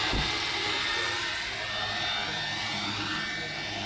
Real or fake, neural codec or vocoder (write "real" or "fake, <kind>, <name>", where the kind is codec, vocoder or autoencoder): real